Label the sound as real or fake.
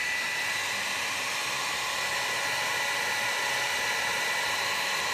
real